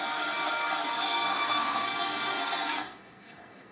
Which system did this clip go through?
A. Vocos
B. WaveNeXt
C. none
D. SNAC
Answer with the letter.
D